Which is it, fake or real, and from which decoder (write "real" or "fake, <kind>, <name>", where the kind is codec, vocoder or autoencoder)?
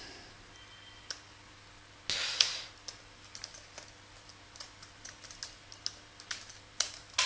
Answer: real